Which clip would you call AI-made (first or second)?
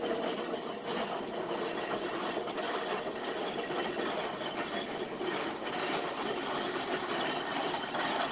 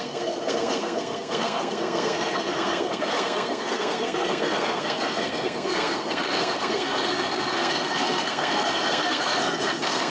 second